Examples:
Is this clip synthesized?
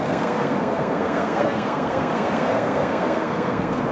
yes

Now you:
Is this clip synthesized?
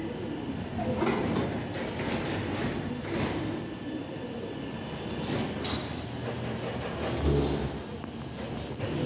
no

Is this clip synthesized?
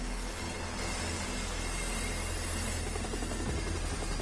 no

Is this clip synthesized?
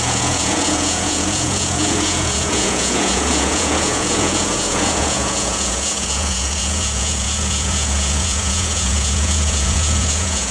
yes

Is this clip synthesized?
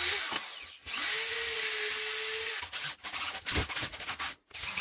no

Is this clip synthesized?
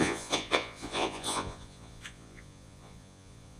yes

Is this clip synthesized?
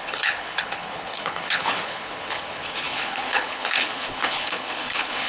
yes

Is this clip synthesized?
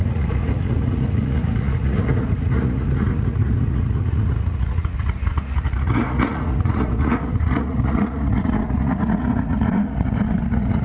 yes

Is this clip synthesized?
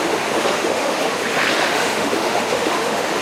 yes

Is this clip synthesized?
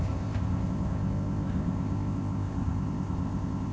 yes